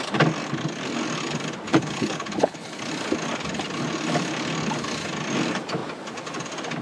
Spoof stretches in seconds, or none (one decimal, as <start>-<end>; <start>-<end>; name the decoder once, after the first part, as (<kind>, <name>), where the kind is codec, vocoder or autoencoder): 1.7-2.8 (codec, HILCodec)